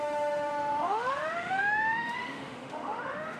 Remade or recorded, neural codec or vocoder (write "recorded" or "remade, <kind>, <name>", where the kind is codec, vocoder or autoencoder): remade, autoencoder, DAC-VAE